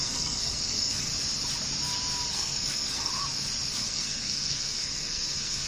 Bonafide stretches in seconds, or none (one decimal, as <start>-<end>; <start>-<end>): 1.1-2.3; 3.1-3.7